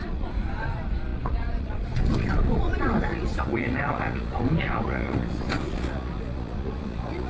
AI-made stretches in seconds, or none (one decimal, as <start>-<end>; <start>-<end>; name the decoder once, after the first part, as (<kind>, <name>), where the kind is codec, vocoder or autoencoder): 0.0-7.3 (vocoder, Vocos)